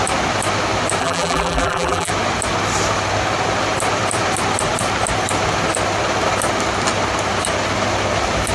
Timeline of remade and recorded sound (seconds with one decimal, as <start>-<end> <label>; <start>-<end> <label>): 0.0-1.0 recorded; 1.0-2.1 remade; 2.1-8.5 recorded